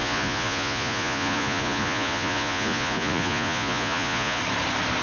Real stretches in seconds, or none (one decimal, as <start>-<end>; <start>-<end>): 4.4-5.0